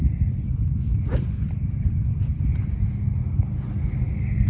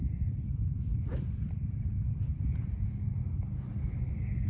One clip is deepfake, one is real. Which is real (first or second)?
first